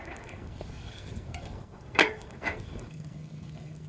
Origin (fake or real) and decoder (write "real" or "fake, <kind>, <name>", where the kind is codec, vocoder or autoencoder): fake, codec, SNAC